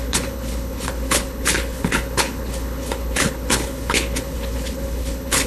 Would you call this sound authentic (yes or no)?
no